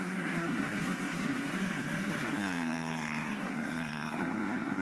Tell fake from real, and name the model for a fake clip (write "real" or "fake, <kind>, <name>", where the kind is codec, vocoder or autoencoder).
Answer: fake, codec, SNAC